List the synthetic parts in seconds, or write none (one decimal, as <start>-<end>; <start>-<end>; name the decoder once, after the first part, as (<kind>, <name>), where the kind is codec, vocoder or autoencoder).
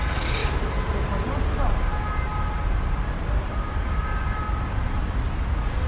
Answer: none